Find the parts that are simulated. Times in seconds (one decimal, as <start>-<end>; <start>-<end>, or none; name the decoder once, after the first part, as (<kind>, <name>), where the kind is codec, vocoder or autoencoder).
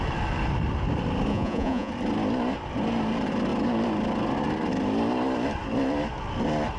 1.3-1.9 (vocoder, Vocos)